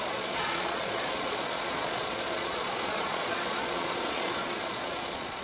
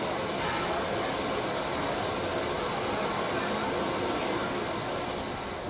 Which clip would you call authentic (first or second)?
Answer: second